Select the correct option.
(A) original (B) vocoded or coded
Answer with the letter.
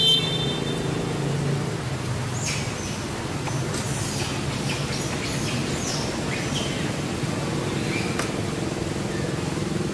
A